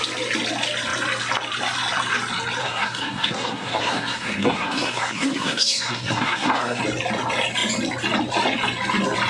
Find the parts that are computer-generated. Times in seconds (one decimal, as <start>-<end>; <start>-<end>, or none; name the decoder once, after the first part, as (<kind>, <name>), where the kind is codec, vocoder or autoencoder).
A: 2.6-6.8 (codec, SNAC)